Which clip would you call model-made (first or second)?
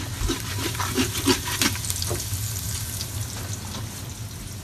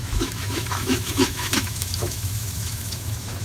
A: second